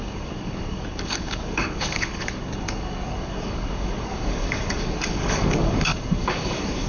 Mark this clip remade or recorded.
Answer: remade